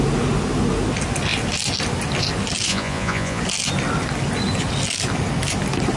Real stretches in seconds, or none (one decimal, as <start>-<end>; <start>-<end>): 0.0-2.7; 3.4-6.0